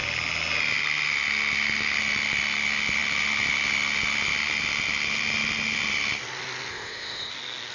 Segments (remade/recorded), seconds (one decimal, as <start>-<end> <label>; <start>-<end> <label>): 0.0-6.7 recorded; 6.7-7.3 remade; 7.3-7.7 recorded